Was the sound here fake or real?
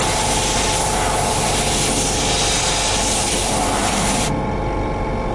real